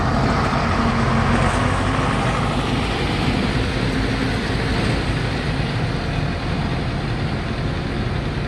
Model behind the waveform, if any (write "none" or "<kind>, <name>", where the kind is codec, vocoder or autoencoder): none